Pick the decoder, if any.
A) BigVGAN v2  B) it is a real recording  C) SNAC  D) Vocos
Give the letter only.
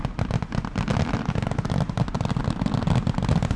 B